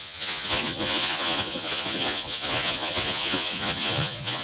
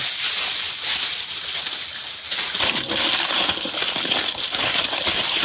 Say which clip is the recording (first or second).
second